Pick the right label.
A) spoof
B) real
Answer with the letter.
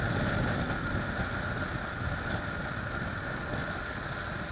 B